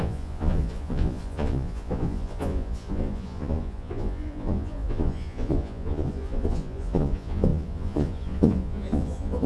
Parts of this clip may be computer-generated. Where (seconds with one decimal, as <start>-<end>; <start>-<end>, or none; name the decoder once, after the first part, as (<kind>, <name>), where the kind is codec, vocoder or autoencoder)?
0.0-9.5 (vocoder, Vocos)